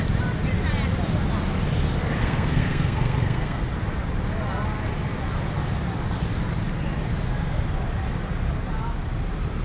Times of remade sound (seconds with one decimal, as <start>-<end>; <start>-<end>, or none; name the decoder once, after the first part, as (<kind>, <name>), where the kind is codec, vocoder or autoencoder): 2.2-3.6 (codec, SNAC)